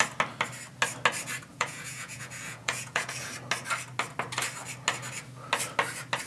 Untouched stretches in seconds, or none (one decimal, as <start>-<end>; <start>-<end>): 0.0-1.5; 3.3-6.3